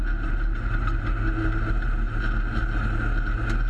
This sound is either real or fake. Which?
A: real